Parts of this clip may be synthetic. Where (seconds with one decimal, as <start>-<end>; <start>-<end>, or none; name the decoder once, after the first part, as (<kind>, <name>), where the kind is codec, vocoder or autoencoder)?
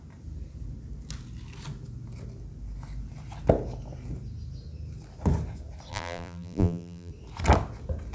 5.9-7.1 (vocoder, BigVGAN v2)